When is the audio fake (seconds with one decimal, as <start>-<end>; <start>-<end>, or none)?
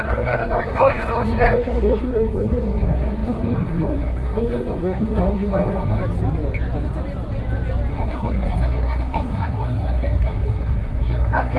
0.0-6.0; 7.9-11.6